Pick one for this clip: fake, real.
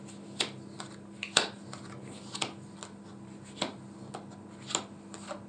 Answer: real